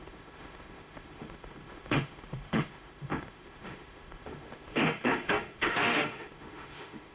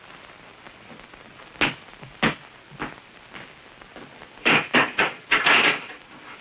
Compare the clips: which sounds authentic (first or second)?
second